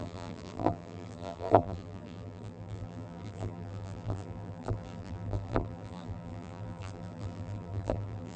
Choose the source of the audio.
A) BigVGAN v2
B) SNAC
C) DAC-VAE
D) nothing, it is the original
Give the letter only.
A